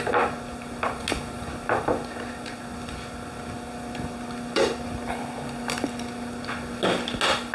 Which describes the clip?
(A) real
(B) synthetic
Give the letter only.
A